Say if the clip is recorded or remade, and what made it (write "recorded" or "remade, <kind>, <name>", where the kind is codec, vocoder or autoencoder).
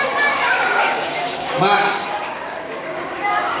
remade, codec, DAC